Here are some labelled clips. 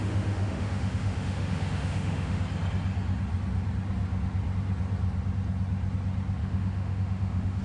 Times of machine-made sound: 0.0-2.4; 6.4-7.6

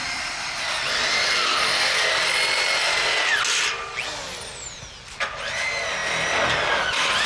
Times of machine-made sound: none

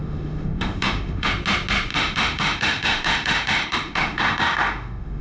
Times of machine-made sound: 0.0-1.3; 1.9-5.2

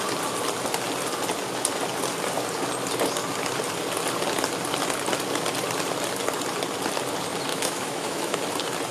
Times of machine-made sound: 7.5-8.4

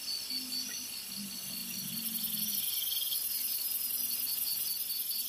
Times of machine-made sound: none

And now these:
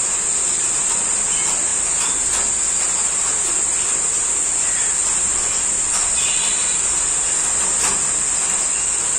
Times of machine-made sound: none

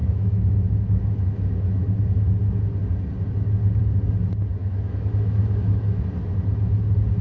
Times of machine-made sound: 0.0-2.0; 4.6-6.0

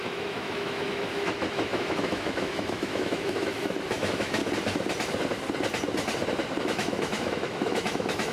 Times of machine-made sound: 0.0-4.4; 6.6-8.3